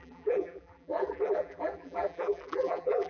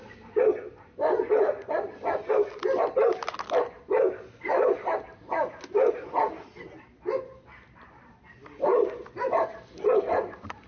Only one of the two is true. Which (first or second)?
second